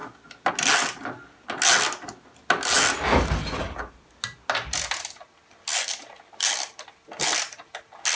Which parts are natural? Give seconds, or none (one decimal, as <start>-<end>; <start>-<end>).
0.0-8.1